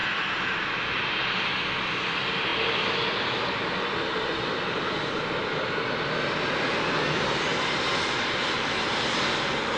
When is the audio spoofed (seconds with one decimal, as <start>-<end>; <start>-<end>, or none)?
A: none